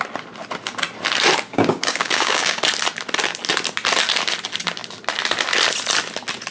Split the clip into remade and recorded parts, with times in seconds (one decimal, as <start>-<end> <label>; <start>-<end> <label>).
0.0-1.5 recorded; 1.5-2.6 remade; 2.6-6.5 recorded